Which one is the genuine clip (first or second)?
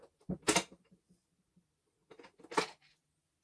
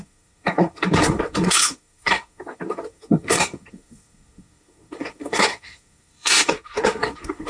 first